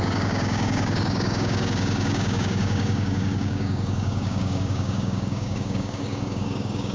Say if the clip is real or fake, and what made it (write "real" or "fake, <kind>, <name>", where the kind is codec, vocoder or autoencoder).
fake, codec, DAC